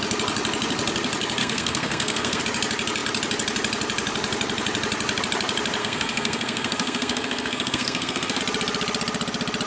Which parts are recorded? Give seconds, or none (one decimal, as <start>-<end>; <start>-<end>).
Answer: 0.0-1.4; 2.4-5.8; 8.4-9.7